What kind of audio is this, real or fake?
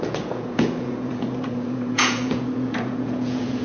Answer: fake